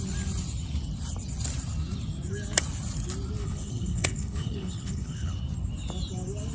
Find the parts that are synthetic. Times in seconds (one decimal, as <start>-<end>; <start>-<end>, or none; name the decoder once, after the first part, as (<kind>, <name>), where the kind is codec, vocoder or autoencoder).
3.4-5.3 (codec, HILCodec)

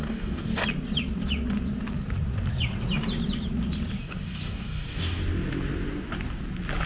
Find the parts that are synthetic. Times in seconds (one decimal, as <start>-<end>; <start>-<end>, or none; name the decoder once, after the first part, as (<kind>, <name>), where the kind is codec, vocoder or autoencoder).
0.0-0.6 (codec, DAC); 4.0-5.2

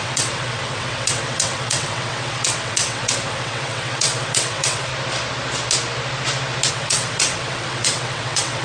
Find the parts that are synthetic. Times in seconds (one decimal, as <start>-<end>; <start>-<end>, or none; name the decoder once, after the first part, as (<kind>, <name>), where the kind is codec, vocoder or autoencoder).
0.0-4.9 (vocoder, WaveNeXt); 6.7-8.6

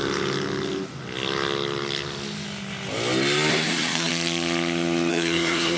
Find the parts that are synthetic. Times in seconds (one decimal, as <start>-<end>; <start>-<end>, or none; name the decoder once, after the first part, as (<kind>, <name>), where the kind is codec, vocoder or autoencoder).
3.5-4.1 (codec, SNAC); 5.1-5.8

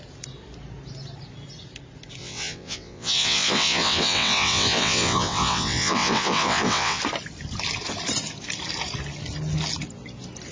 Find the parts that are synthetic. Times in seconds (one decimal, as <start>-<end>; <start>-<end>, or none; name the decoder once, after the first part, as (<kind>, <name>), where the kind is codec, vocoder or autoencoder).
2.2-7.0 (vocoder, WaveNeXt)

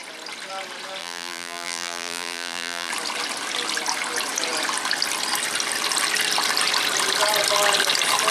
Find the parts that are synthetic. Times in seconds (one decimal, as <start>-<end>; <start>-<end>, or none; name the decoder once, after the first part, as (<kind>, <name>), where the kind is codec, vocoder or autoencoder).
1.0-2.9 (vocoder, BigVGAN v2)